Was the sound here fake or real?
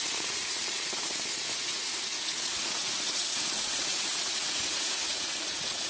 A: fake